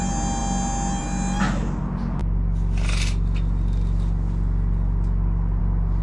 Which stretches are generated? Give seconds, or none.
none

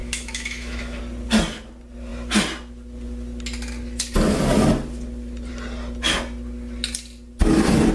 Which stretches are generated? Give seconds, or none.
0.0-1.0 (autoencoder, DAC-VAE)

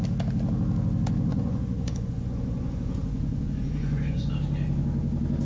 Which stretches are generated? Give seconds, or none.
1.3-4.3 (vocoder, Vocos)

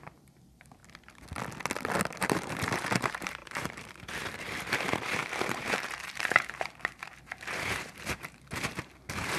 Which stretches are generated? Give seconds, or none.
0.0-0.8 (vocoder, BigVGAN v2); 2.2-9.4